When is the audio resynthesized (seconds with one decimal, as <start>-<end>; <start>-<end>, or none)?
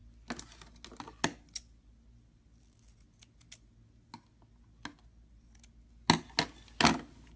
none